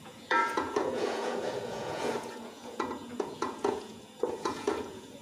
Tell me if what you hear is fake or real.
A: fake